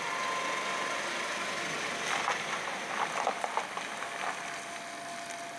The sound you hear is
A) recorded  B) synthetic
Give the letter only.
A